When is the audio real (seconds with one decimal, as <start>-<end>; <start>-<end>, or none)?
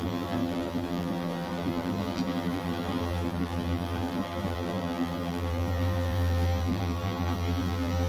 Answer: none